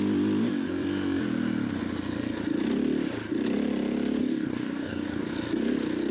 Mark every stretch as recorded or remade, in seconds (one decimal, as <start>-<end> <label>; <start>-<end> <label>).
0.0-4.2 recorded; 4.2-5.3 remade; 5.3-6.1 recorded